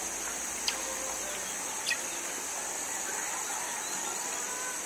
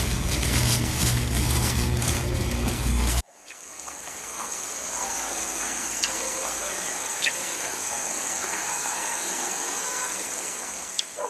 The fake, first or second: second